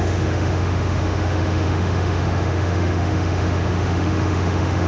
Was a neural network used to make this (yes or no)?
yes